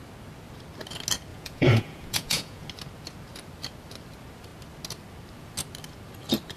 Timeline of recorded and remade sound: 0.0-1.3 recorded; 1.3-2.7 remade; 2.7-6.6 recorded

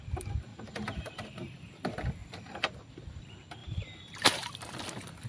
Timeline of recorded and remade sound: 0.0-0.5 recorded; 0.5-1.4 remade; 1.4-2.2 recorded; 2.2-2.7 remade; 2.7-3.6 recorded; 3.6-4.5 remade; 4.5-5.3 recorded

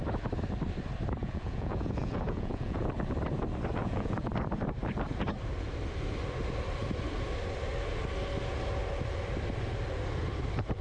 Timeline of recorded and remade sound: 0.0-1.2 recorded; 1.2-2.9 remade; 2.9-3.8 recorded; 3.8-4.3 remade; 4.3-10.8 recorded

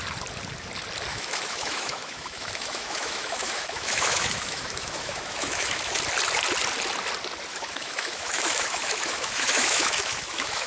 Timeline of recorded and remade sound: 0.0-1.1 recorded; 1.1-6.0 remade; 6.0-7.5 recorded; 7.5-10.7 remade

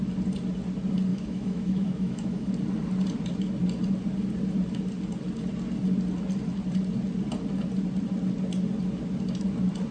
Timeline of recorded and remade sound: 0.0-1.1 recorded; 1.1-2.5 remade; 2.5-9.9 recorded

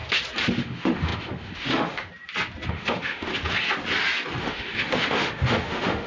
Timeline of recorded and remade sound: 0.0-0.5 recorded; 0.5-2.1 remade; 2.1-2.7 recorded; 2.7-3.3 remade; 3.3-4.4 recorded; 4.4-6.1 remade

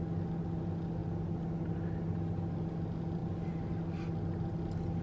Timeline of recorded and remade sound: 0.0-5.0 recorded